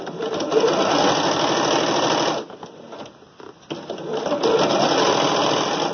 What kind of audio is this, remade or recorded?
recorded